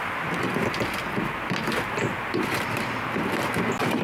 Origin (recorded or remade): recorded